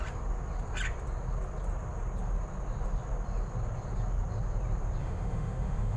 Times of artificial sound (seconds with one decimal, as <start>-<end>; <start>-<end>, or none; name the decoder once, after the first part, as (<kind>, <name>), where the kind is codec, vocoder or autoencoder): 5.0-6.0 (autoencoder, DAC-VAE)